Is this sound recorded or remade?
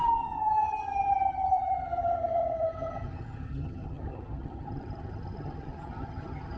remade